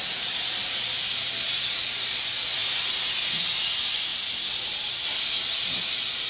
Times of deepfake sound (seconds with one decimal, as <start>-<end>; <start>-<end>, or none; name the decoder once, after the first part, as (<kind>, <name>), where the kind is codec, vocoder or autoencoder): none